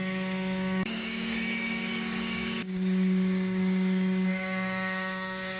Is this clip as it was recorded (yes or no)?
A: no